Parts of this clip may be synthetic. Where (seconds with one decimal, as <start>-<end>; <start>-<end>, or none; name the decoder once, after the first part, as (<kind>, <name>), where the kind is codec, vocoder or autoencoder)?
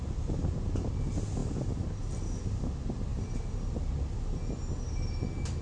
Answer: none